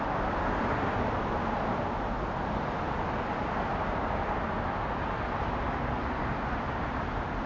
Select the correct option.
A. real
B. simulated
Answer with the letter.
A